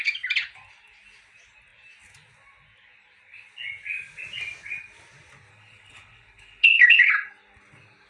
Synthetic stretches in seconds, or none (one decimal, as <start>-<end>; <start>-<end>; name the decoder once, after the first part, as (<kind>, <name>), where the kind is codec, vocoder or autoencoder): 5.5-7.1 (codec, HILCodec)